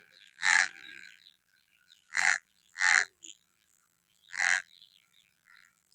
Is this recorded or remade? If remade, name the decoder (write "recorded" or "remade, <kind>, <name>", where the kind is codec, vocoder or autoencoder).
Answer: remade, vocoder, BigVGAN v2